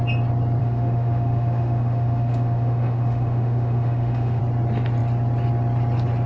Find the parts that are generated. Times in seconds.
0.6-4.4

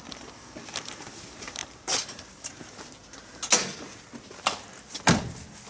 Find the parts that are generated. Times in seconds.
none

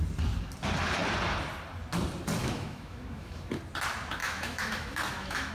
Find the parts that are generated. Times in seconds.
2.4-3.6; 4.2-5.5

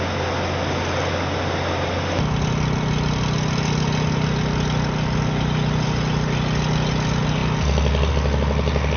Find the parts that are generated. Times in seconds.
none

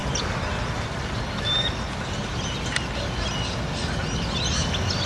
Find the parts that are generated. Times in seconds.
none

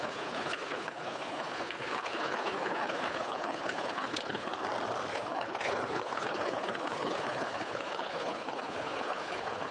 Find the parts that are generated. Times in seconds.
0.0-4.5; 5.1-9.7